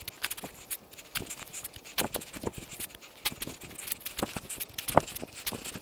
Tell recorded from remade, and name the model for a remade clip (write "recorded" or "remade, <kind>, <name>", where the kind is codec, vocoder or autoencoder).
recorded